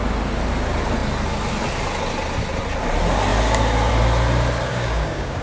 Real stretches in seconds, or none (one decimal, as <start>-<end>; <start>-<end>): 0.0-4.7